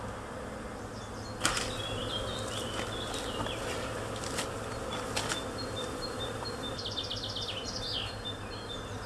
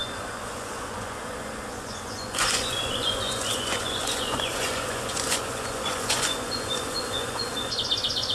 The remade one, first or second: second